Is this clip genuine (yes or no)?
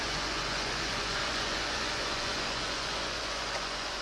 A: no